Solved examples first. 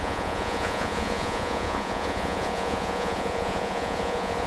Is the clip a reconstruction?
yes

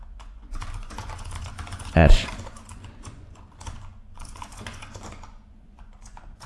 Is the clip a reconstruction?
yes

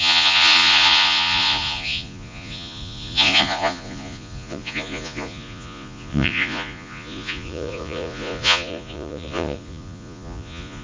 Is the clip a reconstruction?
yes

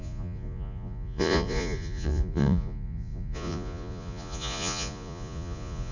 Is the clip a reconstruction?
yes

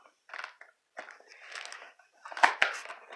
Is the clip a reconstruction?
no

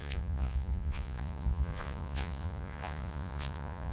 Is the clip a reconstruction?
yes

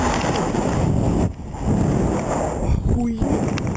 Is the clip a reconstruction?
no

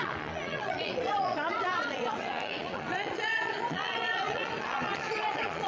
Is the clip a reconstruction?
yes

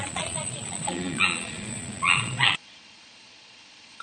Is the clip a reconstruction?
yes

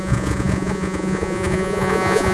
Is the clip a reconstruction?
yes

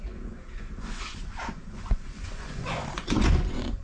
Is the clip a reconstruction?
yes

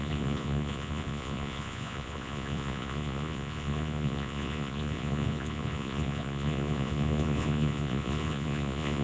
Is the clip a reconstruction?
yes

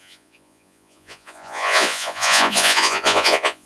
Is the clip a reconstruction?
yes